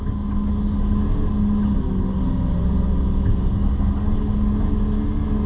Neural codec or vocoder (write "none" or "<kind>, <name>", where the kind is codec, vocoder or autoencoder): none